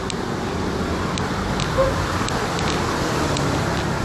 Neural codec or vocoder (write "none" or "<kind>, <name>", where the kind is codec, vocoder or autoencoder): none